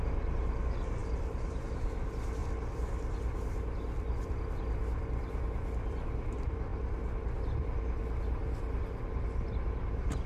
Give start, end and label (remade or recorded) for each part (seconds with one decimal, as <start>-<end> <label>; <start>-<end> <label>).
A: 0.0-2.4 recorded; 2.4-4.5 remade; 4.5-10.3 recorded